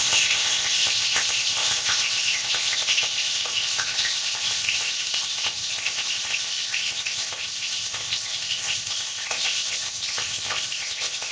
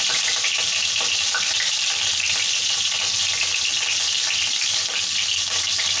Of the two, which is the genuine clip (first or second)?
second